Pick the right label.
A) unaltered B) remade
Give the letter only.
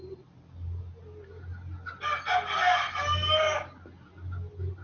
A